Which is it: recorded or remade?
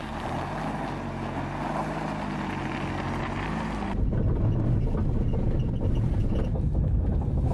recorded